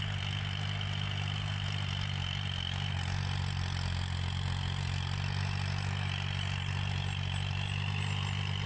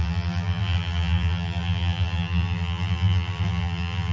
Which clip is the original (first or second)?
first